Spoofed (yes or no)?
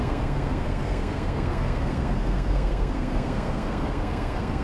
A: yes